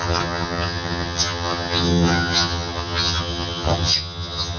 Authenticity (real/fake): fake